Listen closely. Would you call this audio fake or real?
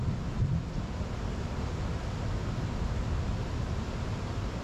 real